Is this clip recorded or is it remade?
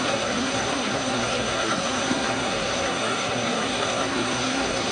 remade